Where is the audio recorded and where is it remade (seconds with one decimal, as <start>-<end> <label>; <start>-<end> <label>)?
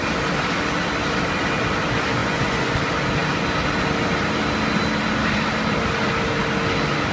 0.0-2.2 recorded; 2.2-2.8 remade; 2.8-7.1 recorded